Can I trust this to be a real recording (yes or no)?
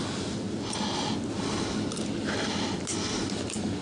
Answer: yes